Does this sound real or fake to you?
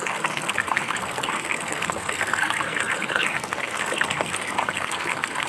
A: fake